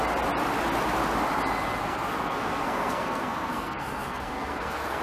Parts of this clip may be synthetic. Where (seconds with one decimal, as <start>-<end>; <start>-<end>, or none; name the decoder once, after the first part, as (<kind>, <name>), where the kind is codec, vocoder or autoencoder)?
1.8-5.0 (codec, SNAC)